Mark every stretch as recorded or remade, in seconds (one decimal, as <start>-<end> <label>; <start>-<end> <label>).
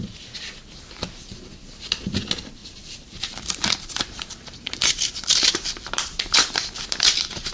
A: 0.0-2.6 recorded; 2.6-6.8 remade; 6.8-7.5 recorded